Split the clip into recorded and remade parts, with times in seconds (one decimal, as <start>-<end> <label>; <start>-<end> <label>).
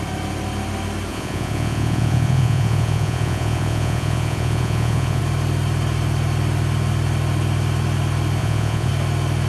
0.0-1.1 recorded; 1.1-5.2 remade; 5.2-8.4 recorded; 8.4-8.9 remade; 8.9-9.5 recorded